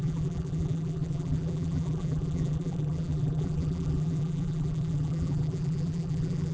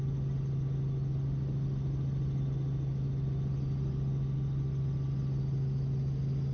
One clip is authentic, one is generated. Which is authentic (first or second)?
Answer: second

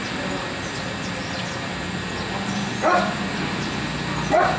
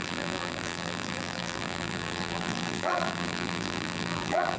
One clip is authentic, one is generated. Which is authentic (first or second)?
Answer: first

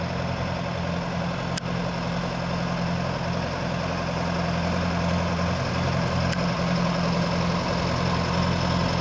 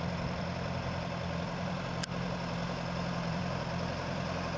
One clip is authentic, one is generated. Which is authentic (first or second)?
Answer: first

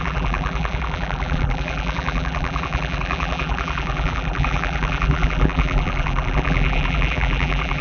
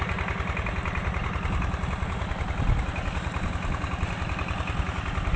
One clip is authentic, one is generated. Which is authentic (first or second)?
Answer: second